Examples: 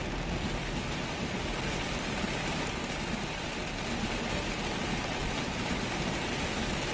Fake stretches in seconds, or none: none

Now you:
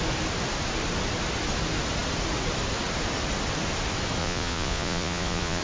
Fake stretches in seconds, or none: 4.2-5.6 (vocoder, Vocos)

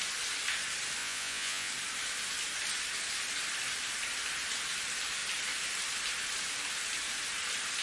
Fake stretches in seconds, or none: 1.0-1.7 (vocoder, Vocos)

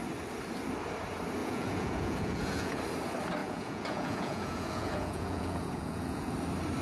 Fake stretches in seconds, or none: 1.4-2.8 (vocoder, Vocos); 3.4-6.3